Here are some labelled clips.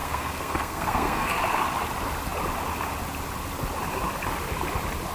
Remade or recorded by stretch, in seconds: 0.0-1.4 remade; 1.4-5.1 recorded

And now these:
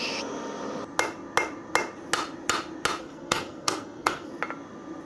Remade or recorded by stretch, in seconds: 0.0-3.0 recorded; 3.0-4.3 remade; 4.3-5.1 recorded

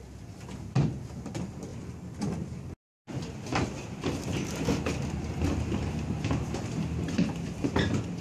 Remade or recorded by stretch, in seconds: 0.0-8.2 recorded